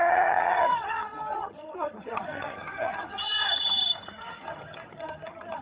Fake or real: fake